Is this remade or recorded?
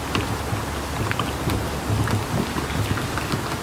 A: recorded